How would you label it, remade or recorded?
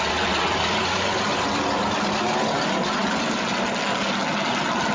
recorded